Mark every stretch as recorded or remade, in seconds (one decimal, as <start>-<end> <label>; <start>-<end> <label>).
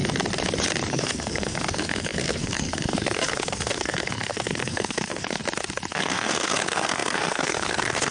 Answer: 0.0-0.9 recorded; 0.9-5.4 remade; 5.4-5.9 recorded; 5.9-8.1 remade